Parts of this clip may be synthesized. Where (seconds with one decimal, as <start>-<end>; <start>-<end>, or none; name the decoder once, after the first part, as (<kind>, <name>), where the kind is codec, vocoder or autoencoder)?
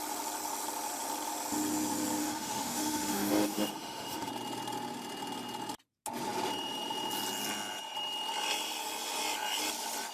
2.2-4.3 (autoencoder, DAC-VAE)